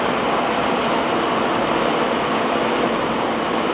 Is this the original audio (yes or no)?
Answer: yes